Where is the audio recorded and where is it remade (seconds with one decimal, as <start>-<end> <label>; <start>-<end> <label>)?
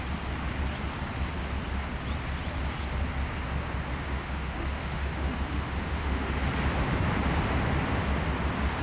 0.0-3.9 recorded; 3.9-6.3 remade; 6.3-8.8 recorded